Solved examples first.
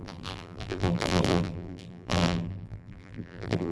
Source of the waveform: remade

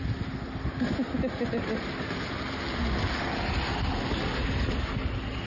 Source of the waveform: recorded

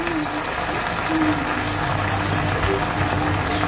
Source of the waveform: recorded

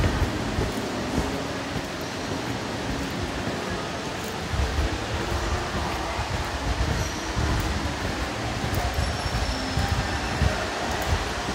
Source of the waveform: recorded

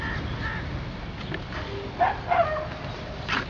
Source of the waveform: recorded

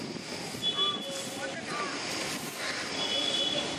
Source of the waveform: recorded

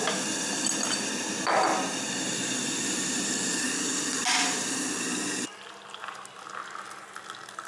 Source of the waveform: recorded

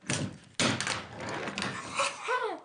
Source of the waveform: recorded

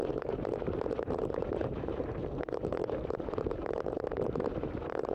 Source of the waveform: remade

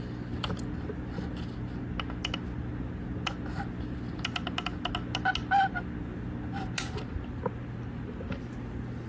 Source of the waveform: recorded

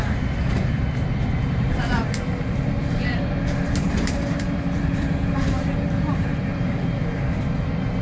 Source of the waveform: remade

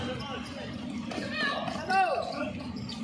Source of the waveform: recorded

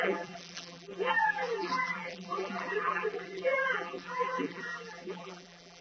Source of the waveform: remade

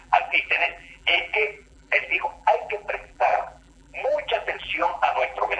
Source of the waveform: remade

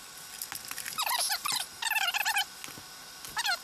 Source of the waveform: recorded